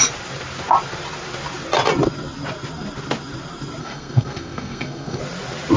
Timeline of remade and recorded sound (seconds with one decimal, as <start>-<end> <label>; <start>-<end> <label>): 0.0-3.8 recorded; 3.8-5.2 remade; 5.2-5.8 recorded